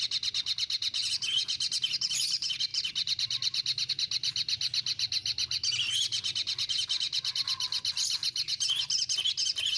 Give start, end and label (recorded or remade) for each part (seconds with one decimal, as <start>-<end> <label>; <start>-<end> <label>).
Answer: 0.0-9.8 recorded